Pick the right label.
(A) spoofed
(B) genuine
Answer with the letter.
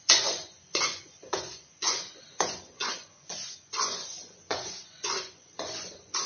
A